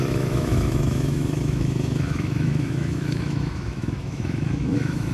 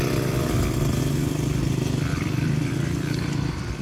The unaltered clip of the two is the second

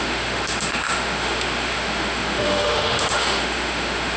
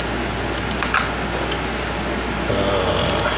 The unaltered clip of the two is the second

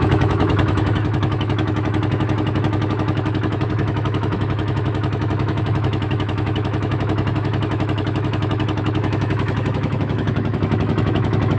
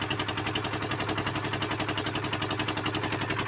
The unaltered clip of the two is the second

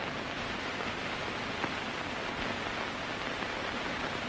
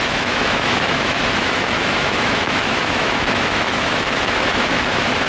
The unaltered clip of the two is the first